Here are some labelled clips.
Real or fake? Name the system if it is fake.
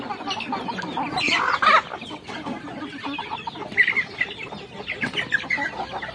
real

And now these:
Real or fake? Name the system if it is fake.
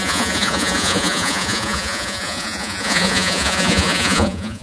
fake, vocoder, Vocos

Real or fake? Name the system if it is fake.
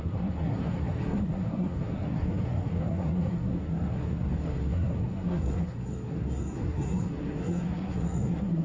fake, codec, SNAC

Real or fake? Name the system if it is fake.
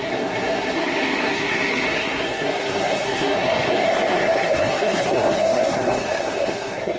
fake, codec, SNAC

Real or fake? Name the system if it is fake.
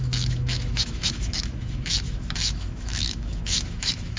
fake, autoencoder, DAC-VAE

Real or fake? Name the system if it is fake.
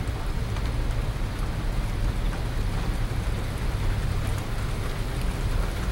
real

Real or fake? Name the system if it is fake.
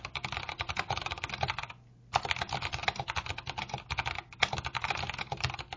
real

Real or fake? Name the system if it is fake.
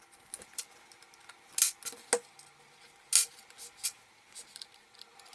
real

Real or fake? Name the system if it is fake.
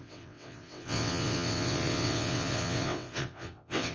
fake, vocoder, WaveNeXt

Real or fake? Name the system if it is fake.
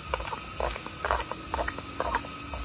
real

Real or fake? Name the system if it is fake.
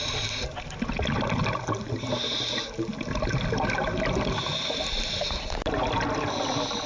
real